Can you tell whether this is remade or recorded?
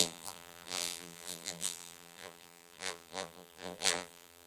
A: remade